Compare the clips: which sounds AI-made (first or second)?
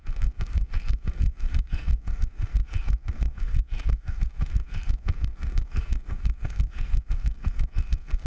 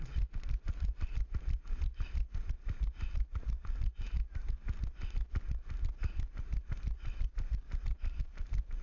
first